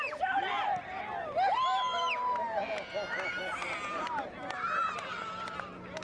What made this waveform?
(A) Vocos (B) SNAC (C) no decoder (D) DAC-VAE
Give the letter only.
C